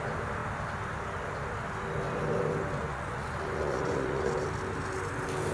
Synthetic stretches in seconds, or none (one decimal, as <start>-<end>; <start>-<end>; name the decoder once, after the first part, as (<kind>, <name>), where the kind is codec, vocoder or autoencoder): 2.8-4.3 (vocoder, Vocos)